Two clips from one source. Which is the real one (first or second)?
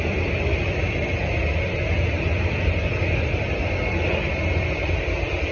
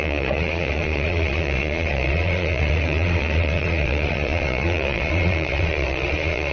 first